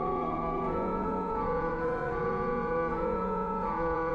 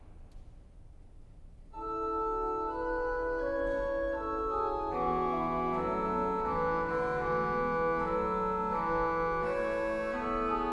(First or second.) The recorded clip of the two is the second